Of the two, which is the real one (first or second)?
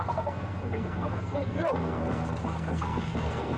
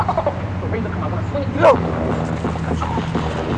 second